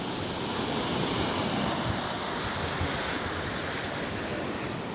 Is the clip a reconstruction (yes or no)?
no